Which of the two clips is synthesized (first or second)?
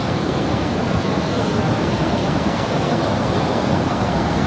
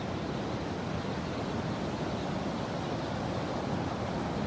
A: first